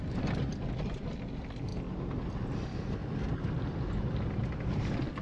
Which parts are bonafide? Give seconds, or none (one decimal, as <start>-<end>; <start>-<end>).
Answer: 0.5-1.7; 4.8-5.2